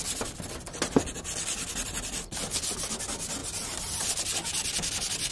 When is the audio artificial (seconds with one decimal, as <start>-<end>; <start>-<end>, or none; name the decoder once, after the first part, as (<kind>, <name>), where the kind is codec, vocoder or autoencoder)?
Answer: 3.4-4.1 (vocoder, BigVGAN v2)